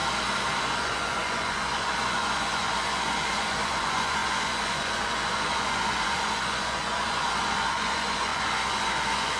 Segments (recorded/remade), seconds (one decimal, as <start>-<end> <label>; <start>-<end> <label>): 0.0-0.6 recorded; 0.6-9.4 remade